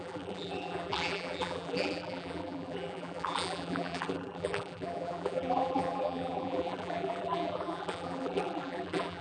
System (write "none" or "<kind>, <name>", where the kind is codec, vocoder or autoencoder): vocoder, BigVGAN v2